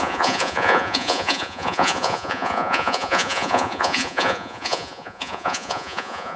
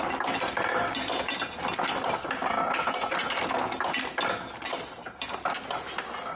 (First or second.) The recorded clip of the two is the second